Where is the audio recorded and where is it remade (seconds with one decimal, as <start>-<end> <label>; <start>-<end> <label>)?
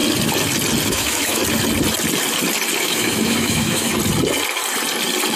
0.0-0.9 recorded; 0.9-1.4 remade; 1.4-2.8 recorded; 2.8-3.9 remade; 3.9-5.4 recorded